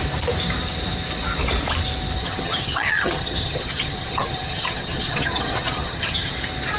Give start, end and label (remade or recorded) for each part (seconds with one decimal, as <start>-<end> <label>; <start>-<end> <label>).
0.0-2.2 recorded; 2.2-6.3 remade; 6.3-6.8 recorded

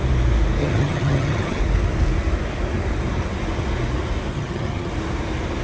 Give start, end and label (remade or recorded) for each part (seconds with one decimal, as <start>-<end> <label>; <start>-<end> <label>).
0.0-0.6 recorded; 0.6-1.6 remade; 1.6-4.3 recorded; 4.3-4.9 remade; 4.9-5.6 recorded

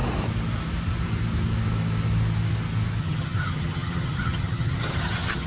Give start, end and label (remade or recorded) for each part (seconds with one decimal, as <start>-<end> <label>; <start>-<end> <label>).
0.0-3.0 recorded; 3.0-5.5 remade

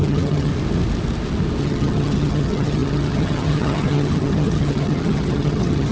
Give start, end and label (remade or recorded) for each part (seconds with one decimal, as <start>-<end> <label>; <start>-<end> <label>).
0.0-0.5 remade; 0.5-1.6 recorded; 1.6-5.9 remade

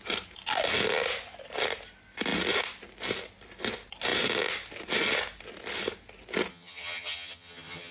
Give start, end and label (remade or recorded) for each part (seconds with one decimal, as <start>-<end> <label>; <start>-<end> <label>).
0.0-6.5 recorded; 6.5-7.9 remade

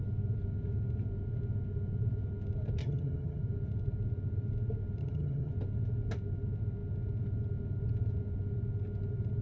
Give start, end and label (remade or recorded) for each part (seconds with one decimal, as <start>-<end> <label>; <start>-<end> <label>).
0.0-2.8 recorded; 2.8-3.4 remade; 3.4-5.0 recorded; 5.0-5.5 remade; 5.5-9.4 recorded